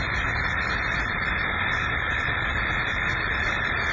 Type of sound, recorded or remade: remade